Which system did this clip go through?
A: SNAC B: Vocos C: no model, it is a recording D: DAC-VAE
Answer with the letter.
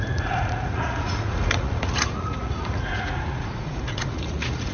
B